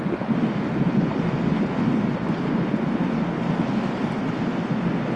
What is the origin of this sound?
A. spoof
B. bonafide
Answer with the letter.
B